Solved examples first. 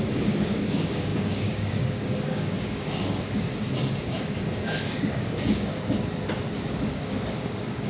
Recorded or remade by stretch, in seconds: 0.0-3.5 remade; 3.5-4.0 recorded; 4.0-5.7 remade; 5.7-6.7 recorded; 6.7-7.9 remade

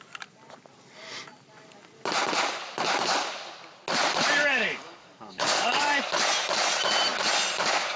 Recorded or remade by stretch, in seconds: 0.0-4.4 recorded; 4.4-6.0 remade; 6.0-8.0 recorded